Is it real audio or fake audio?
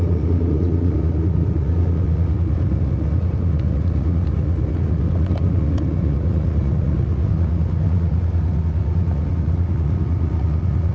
fake